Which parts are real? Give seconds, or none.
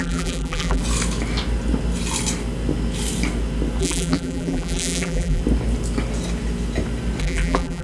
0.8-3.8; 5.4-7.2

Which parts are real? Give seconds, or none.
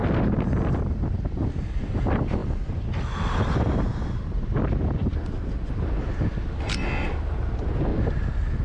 0.0-5.0; 6.0-7.9